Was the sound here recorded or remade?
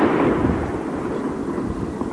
recorded